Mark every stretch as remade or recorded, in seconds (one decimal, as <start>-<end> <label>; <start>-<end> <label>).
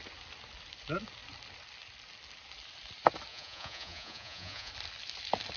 0.0-3.3 recorded; 3.3-4.7 remade; 4.7-5.6 recorded